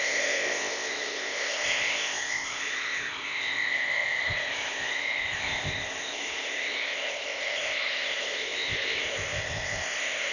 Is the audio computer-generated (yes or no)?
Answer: yes